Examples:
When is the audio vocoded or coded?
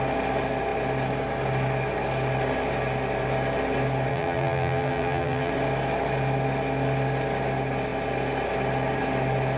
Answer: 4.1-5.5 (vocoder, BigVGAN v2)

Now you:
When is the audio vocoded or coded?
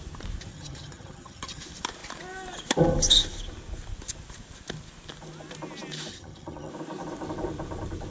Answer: 0.5-1.6 (vocoder, HiFi-GAN); 6.1-6.7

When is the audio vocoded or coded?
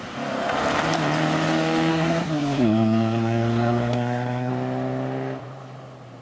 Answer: 1.9-4.5 (codec, SNAC)